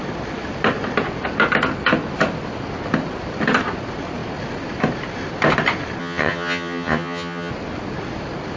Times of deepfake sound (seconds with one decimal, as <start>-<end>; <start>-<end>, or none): 6.0-7.5

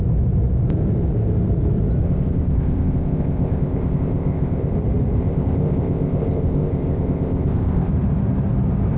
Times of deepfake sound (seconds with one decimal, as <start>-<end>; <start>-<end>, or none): 2.0-4.7; 5.2-7.9

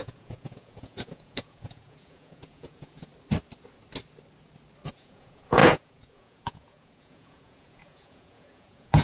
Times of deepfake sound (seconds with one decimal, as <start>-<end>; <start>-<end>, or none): 0.0-3.1; 4.9-9.0